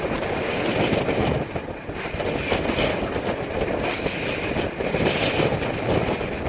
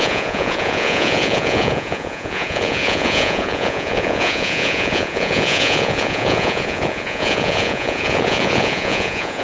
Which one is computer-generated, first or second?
second